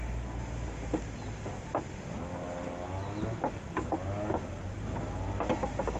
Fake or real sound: real